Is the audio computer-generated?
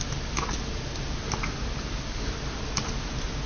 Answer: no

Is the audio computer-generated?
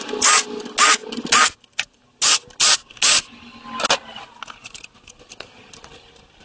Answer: no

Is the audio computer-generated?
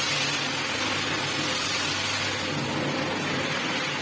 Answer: no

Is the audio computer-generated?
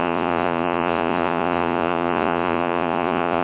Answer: yes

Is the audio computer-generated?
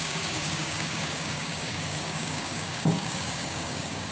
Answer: yes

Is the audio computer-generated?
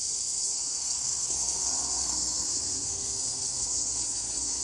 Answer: yes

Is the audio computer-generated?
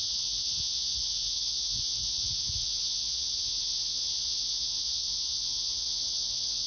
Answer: yes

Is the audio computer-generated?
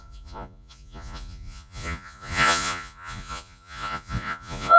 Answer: yes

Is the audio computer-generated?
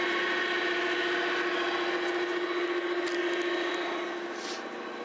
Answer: no